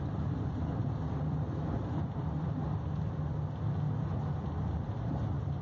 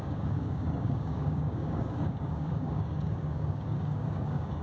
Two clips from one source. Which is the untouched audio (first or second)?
first